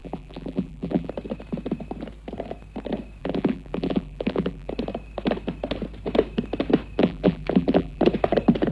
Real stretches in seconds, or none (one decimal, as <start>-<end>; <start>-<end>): 1.1-3.2; 4.7-7.0; 8.0-8.7